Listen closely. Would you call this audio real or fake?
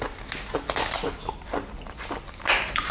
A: real